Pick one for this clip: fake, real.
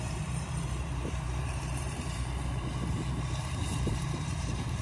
fake